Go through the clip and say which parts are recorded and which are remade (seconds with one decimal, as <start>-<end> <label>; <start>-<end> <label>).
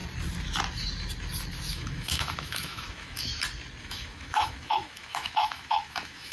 0.0-1.7 recorded; 1.7-3.3 remade; 3.3-3.8 recorded; 3.8-6.3 remade